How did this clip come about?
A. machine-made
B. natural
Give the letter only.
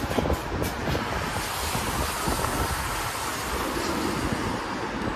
B